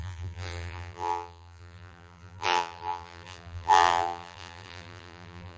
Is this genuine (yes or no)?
no